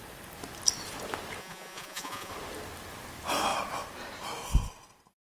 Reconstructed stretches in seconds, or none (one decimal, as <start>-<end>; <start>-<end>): 1.4-2.3

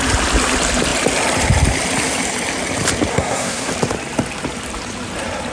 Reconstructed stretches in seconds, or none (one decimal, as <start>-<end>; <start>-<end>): 3.1-3.7

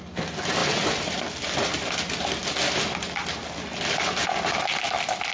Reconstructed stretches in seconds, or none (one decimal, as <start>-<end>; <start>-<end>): none

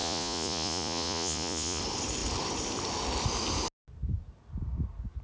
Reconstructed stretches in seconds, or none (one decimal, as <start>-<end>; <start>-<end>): 0.0-1.8

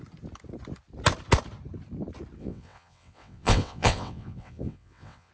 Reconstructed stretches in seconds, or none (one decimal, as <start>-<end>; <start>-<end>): 2.4-5.3

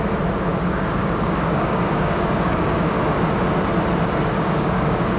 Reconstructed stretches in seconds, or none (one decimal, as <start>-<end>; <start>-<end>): 0.5-3.6; 4.3-5.2